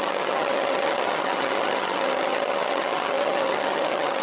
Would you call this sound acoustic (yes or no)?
no